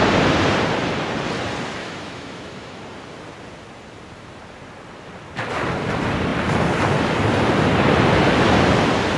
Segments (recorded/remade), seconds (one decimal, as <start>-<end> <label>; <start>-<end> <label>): 0.0-1.8 recorded; 1.8-2.8 remade; 2.8-9.2 recorded